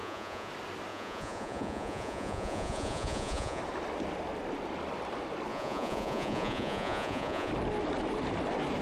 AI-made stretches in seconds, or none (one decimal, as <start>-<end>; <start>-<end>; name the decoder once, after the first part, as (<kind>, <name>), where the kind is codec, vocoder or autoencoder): 0.0-0.5 (vocoder, Vocos); 0.9-3.6; 5.5-7.5